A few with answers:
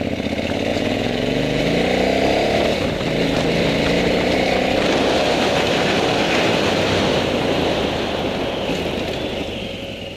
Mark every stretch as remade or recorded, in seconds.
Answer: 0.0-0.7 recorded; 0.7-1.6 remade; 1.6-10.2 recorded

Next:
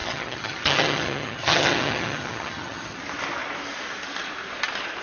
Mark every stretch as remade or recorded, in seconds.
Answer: 0.0-3.0 remade; 3.0-5.0 recorded